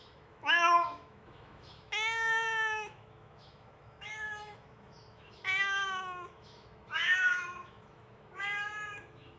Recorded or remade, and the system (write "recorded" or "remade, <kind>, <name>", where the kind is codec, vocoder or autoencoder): remade, autoencoder, DAC-VAE